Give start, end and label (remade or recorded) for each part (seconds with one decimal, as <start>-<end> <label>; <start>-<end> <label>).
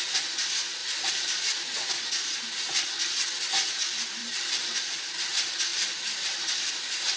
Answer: 0.0-0.8 recorded; 0.8-1.9 remade; 1.9-4.2 recorded; 4.2-4.9 remade; 4.9-5.7 recorded; 5.7-6.7 remade; 6.7-7.2 recorded